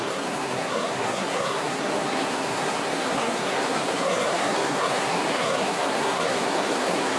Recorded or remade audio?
remade